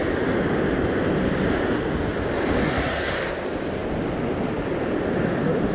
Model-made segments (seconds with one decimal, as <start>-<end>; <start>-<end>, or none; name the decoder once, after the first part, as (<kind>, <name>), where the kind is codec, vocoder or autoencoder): 2.6-3.1 (codec, SNAC)